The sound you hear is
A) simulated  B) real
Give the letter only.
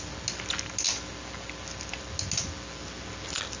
B